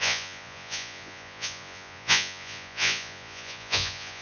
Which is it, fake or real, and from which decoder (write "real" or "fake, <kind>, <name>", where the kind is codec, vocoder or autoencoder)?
fake, vocoder, Vocos